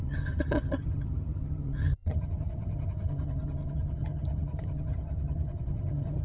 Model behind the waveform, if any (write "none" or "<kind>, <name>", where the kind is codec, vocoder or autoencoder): vocoder, HiFi-GAN